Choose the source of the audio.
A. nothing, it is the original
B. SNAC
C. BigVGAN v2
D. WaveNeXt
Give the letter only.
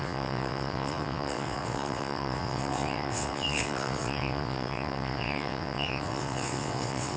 D